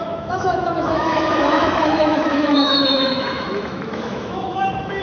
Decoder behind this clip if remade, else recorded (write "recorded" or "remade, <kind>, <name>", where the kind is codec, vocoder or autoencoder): remade, autoencoder, DAC-VAE